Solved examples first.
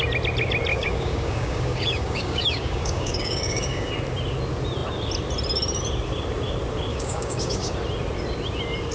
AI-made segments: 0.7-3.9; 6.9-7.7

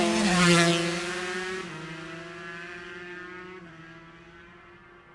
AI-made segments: none

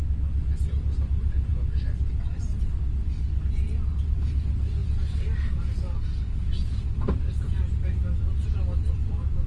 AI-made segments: none

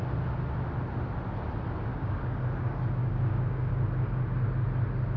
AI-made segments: 1.9-2.4; 3.0-3.7